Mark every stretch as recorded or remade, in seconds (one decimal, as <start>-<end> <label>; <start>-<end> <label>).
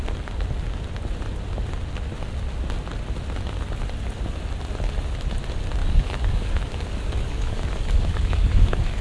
0.0-5.8 recorded; 5.8-9.0 remade